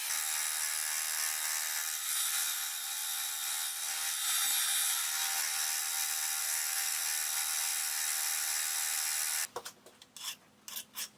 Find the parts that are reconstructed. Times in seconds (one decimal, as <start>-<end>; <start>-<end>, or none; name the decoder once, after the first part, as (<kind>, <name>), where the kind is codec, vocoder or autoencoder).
6.4-7.0 (codec, SNAC)